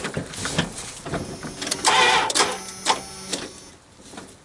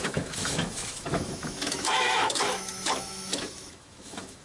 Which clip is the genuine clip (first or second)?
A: first